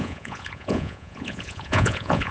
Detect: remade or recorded remade